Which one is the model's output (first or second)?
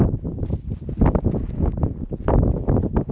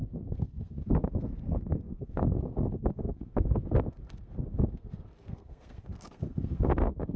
second